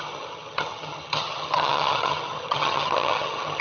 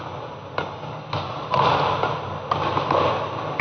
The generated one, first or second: first